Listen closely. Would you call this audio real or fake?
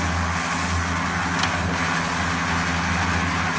real